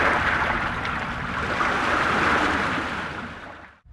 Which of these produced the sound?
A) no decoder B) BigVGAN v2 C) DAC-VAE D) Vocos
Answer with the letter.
A